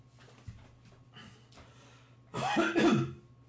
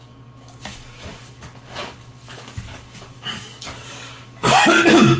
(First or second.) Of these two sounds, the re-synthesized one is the second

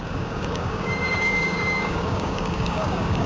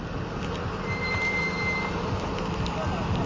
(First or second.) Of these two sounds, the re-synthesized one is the first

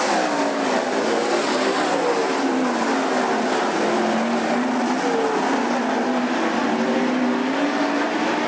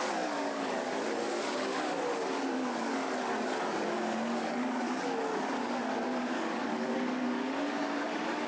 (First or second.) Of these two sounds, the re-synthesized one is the second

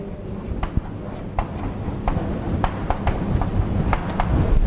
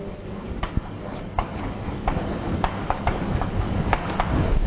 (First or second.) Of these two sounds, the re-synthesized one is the second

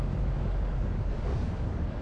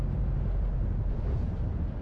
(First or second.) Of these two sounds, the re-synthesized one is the first